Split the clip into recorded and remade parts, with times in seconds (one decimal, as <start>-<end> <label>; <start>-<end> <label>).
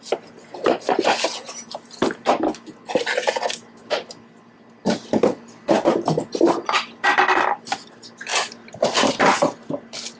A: 0.0-10.2 recorded